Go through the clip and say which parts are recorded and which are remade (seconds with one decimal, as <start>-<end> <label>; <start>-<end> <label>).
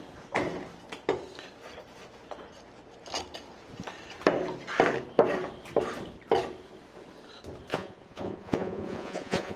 0.0-7.7 recorded; 7.7-9.6 remade